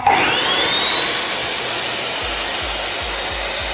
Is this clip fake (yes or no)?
no